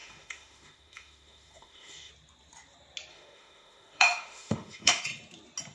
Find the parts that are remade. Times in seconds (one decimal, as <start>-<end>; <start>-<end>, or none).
0.0-2.1; 3.1-5.0